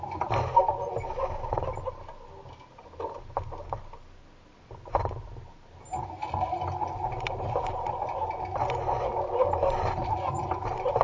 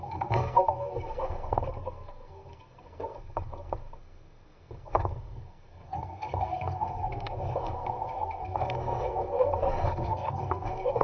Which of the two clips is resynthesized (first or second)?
second